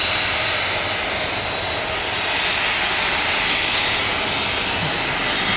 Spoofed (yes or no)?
no